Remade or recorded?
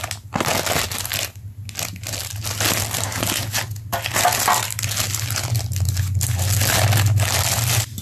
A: recorded